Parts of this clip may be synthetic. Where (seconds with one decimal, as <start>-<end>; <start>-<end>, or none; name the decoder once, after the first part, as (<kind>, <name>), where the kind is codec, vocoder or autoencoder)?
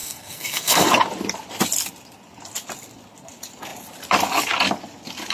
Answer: 0.0-0.9 (codec, SNAC)